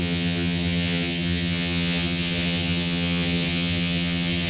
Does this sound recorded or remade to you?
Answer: remade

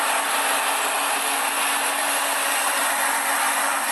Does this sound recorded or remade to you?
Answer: recorded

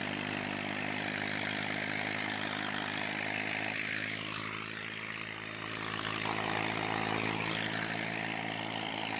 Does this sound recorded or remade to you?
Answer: recorded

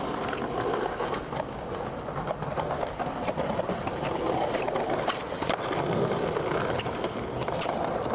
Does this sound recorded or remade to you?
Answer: recorded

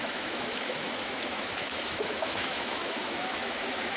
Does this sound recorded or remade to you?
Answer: remade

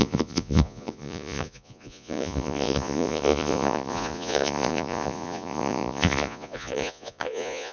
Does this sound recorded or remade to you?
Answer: remade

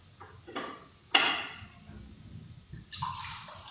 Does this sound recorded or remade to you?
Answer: recorded